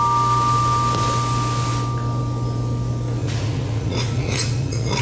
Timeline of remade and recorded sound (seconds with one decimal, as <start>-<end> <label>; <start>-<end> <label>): 0.0-3.2 recorded; 3.2-5.0 remade